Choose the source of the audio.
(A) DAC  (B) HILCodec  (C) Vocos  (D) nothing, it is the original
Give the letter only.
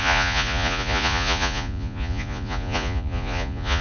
C